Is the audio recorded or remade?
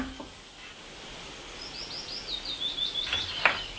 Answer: recorded